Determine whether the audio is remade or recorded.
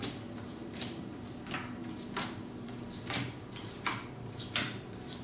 remade